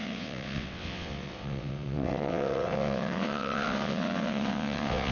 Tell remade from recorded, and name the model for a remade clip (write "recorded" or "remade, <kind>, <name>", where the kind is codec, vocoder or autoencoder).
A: remade, vocoder, WaveNeXt